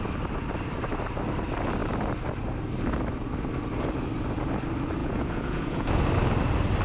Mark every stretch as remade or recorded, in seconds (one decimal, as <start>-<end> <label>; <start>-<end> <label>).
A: 0.0-5.0 recorded; 5.0-6.0 remade; 6.0-6.8 recorded